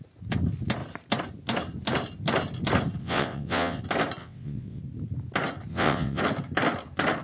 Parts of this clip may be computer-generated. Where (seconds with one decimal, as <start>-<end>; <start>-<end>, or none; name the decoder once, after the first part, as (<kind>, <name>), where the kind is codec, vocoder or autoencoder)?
3.0-3.8 (vocoder, WaveNeXt); 4.2-4.8; 5.7-6.2